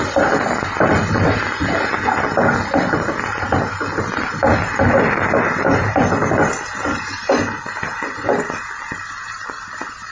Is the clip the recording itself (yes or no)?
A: yes